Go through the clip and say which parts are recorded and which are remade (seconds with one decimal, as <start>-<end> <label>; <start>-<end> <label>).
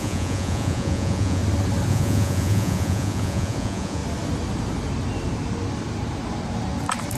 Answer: 0.0-1.4 remade; 1.4-1.9 recorded; 1.9-4.0 remade; 4.0-7.2 recorded